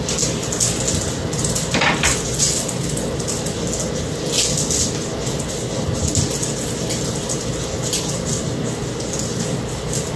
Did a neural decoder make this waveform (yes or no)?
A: no